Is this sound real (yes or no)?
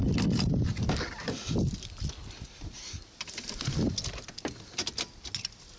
yes